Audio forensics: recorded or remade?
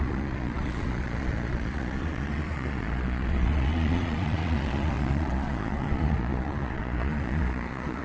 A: remade